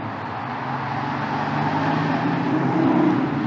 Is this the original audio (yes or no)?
yes